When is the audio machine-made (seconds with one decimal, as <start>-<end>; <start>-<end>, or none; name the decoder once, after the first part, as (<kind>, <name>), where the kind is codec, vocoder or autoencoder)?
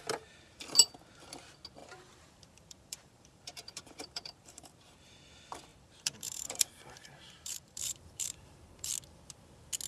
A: 1.8-5.2 (vocoder, BigVGAN v2); 5.7-8.9